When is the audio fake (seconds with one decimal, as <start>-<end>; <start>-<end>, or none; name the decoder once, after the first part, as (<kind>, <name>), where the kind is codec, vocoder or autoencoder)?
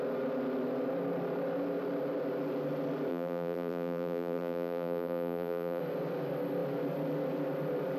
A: 3.1-5.8 (vocoder, BigVGAN v2)